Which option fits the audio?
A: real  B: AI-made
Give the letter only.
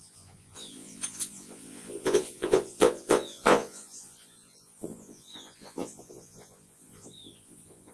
B